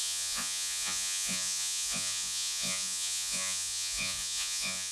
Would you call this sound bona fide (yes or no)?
no